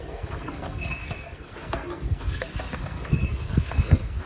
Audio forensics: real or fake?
fake